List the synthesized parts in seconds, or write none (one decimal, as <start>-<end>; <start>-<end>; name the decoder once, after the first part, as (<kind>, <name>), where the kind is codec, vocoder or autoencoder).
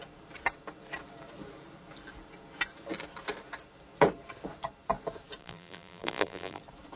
5.4-6.6 (vocoder, BigVGAN v2)